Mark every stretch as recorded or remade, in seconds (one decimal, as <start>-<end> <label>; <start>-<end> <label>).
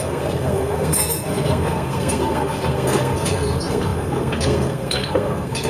0.0-5.7 remade